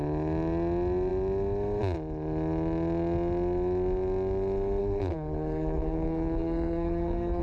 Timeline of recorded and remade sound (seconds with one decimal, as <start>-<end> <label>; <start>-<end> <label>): 0.0-4.8 recorded; 4.8-7.4 remade